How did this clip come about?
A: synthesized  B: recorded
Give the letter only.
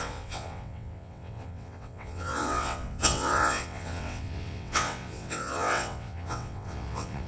A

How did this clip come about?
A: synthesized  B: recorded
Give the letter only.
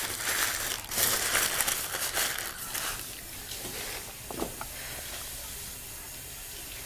B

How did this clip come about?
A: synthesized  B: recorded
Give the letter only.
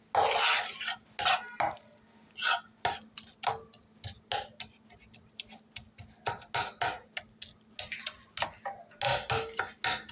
B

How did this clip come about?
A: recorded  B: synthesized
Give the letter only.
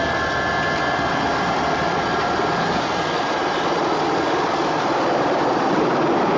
A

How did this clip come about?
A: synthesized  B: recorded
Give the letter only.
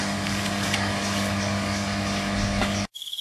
A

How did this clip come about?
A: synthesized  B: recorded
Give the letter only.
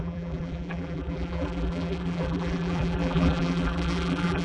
A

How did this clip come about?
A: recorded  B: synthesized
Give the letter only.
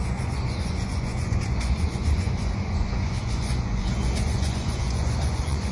B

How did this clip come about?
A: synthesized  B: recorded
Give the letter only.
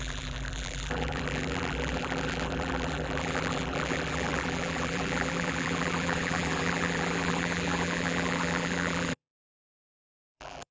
A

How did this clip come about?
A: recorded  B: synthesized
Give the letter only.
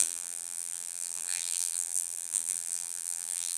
B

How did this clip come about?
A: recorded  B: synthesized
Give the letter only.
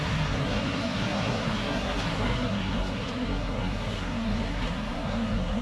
B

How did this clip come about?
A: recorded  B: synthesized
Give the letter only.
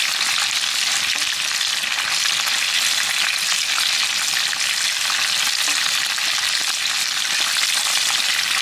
A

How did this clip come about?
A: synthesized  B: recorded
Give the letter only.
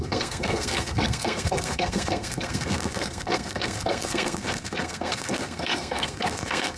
A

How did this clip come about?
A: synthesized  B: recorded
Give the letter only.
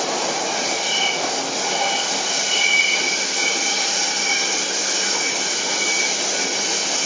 B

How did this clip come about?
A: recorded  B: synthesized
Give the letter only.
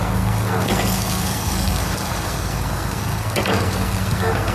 B